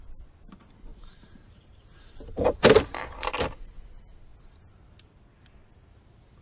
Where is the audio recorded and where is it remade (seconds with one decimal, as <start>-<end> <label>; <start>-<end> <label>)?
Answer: 0.0-0.9 recorded; 0.9-3.3 remade; 3.3-6.4 recorded